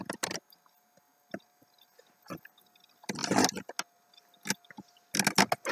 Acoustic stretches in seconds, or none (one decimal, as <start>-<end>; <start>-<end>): 0.0-5.7